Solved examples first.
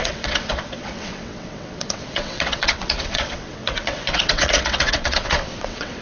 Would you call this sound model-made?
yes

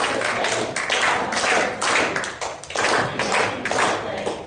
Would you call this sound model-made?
no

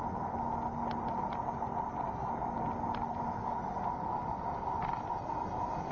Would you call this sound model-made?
no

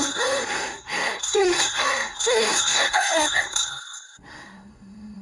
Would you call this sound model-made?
yes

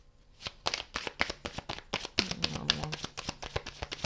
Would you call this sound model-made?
no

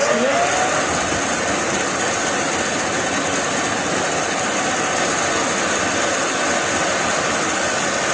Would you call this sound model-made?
no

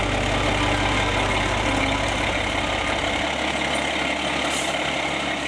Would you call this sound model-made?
no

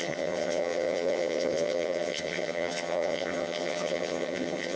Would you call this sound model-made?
yes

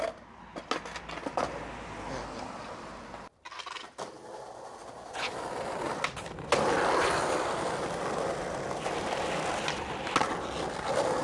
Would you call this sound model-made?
no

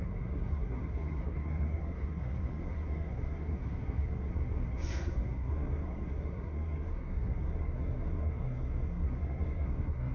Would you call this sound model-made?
yes